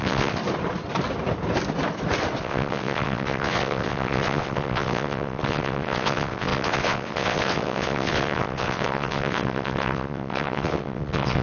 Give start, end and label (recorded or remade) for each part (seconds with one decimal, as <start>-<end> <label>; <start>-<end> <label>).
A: 0.0-0.4 remade; 0.4-2.4 recorded; 2.4-11.4 remade